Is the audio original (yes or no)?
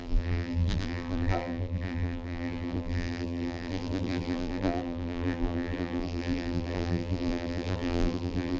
no